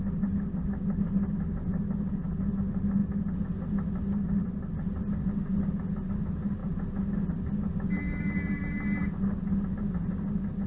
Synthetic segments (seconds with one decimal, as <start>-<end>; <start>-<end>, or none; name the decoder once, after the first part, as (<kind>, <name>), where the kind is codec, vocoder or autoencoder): none